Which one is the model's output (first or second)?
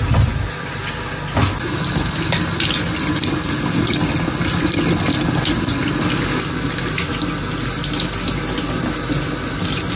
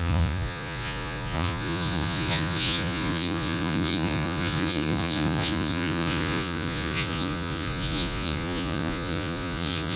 second